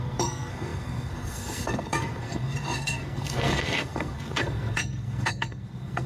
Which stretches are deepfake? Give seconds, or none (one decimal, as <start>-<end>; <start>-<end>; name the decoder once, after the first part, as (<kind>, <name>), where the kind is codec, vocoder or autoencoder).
0.0-6.1 (codec, SNAC)